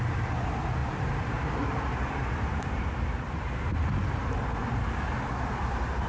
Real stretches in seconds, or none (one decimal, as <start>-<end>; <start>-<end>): 0.0-0.8; 2.9-6.1